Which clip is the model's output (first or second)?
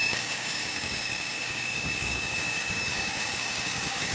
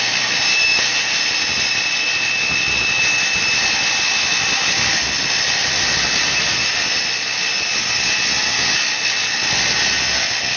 first